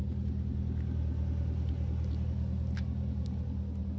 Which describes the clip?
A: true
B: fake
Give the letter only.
A